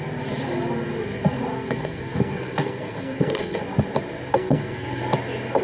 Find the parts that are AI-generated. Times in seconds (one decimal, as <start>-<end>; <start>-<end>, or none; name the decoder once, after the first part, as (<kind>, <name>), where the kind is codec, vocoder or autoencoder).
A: 1.5-3.6 (codec, SNAC); 4.3-5.0

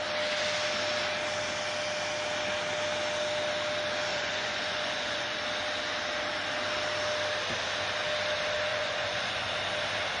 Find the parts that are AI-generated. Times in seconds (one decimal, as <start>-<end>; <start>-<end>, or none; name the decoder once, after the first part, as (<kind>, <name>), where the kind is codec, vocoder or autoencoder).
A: 4.1-5.4 (vocoder, Vocos); 8.7-9.5

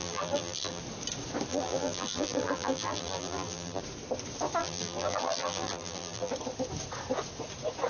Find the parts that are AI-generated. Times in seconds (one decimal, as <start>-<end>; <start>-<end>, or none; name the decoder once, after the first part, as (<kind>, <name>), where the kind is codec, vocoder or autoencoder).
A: 0.0-0.8 (vocoder, BigVGAN v2); 1.5-3.8; 4.6-6.3